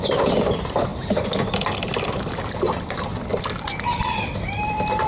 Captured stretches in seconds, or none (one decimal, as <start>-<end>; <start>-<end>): 0.9-4.0

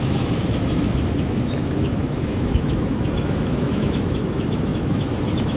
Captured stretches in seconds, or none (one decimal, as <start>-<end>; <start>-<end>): none

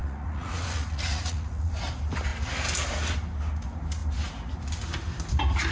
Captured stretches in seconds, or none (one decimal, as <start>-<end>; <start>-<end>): 1.7-5.7

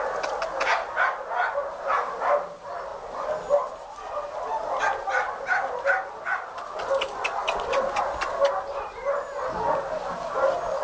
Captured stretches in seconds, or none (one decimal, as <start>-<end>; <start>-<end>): 0.0-10.8

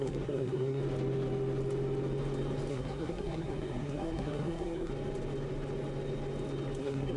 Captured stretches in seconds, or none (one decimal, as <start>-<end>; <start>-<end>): 0.8-2.7; 4.9-6.8